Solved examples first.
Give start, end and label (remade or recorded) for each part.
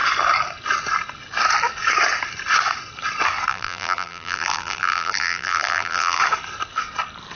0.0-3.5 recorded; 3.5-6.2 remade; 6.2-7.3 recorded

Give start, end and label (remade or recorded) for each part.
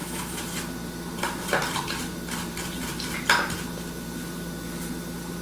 0.0-5.4 recorded